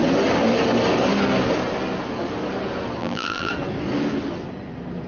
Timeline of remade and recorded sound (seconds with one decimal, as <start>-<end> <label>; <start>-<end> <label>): 0.0-3.0 recorded; 3.0-3.5 remade; 3.5-5.1 recorded